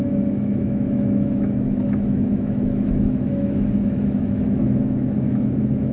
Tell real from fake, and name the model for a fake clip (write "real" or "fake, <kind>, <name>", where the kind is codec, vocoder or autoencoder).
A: fake, autoencoder, DAC-VAE